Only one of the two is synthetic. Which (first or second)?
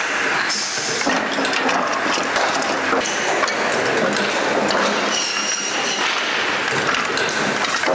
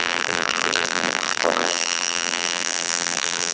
second